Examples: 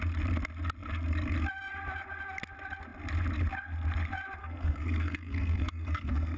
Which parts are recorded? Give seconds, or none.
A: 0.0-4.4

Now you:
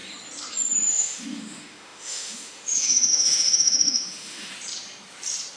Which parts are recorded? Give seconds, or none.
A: 0.0-0.9; 4.5-5.6

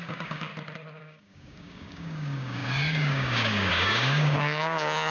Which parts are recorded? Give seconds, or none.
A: 0.5-1.0

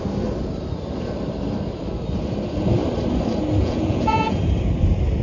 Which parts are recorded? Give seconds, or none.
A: 0.0-3.6; 4.4-5.2

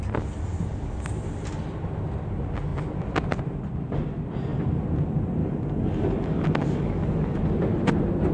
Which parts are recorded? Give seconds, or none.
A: 0.0-5.4; 7.4-8.3

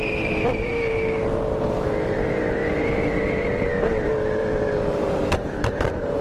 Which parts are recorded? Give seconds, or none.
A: none